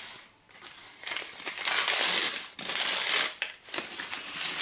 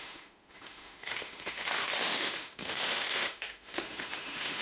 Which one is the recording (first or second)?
first